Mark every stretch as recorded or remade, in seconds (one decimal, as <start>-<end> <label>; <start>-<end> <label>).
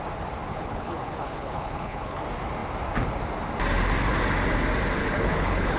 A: 0.0-0.5 recorded; 0.5-2.2 remade; 2.2-5.0 recorded; 5.0-5.8 remade